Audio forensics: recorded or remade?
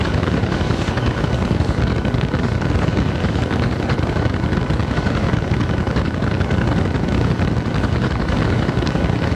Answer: remade